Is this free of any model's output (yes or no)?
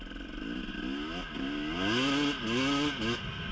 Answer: yes